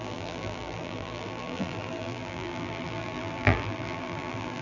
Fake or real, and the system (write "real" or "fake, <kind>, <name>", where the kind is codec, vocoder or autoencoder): fake, vocoder, BigVGAN v2